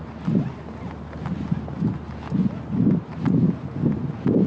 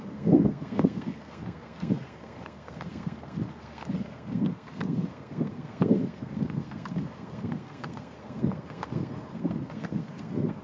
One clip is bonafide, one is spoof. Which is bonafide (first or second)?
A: first